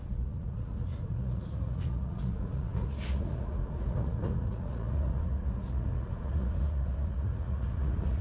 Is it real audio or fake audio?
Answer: fake